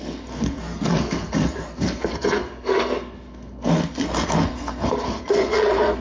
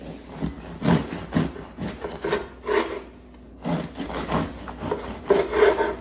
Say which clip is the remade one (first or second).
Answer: first